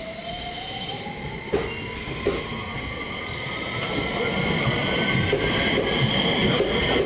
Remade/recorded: recorded